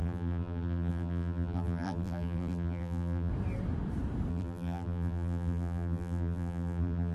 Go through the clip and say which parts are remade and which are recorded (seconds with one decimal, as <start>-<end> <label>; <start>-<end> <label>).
0.0-3.3 remade; 3.3-4.3 recorded; 4.3-7.1 remade